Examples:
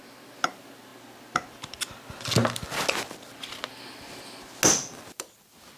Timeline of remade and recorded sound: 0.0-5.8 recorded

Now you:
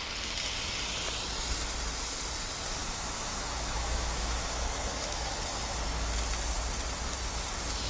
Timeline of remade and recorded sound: 0.0-2.8 recorded; 2.8-5.3 remade; 5.3-7.9 recorded

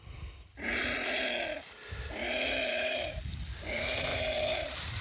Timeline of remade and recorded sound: 0.0-2.7 recorded; 2.7-3.6 remade; 3.6-4.1 recorded; 4.1-5.0 remade

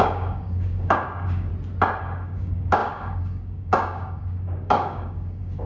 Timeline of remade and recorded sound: 0.0-1.5 remade; 1.5-2.0 recorded; 2.0-5.7 remade

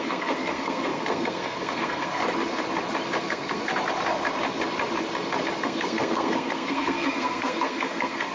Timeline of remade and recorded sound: 0.0-2.2 remade; 2.2-3.2 recorded; 3.2-3.7 remade; 3.7-5.6 recorded; 5.6-8.3 remade

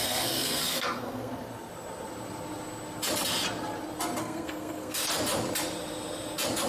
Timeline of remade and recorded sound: 0.0-1.3 remade; 1.3-4.2 recorded; 4.2-5.0 remade; 5.0-6.7 recorded